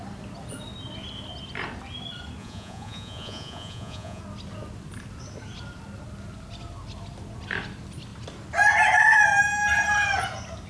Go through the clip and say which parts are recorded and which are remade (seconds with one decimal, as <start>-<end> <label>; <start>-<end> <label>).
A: 0.0-2.4 recorded; 2.4-4.2 remade; 4.2-10.7 recorded